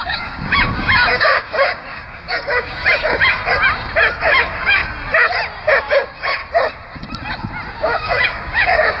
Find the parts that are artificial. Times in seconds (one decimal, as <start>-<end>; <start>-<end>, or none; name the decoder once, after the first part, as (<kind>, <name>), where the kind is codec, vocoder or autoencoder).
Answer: 0.0-3.4 (codec, DAC); 4.2-4.8; 5.8-6.4; 7.7-9.0